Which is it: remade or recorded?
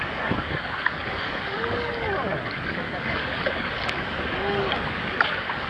remade